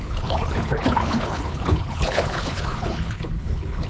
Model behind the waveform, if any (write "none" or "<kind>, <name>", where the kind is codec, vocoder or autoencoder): codec, HILCodec